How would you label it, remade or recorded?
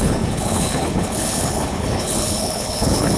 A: remade